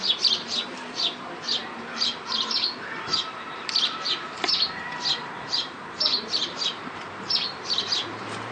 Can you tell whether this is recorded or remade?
remade